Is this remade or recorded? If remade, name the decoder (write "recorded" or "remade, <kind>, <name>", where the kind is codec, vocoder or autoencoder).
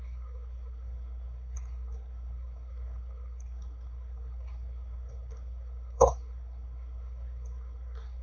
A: remade, codec, SNAC